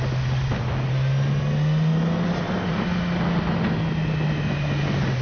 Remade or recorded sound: recorded